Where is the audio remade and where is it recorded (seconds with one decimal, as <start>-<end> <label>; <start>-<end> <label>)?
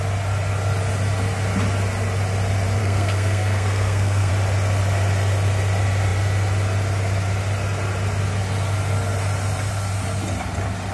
0.0-2.8 recorded; 2.8-4.3 remade; 4.3-10.9 recorded